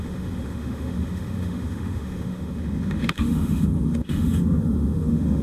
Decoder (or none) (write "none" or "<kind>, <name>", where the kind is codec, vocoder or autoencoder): autoencoder, DAC-VAE